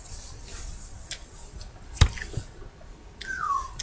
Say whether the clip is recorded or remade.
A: recorded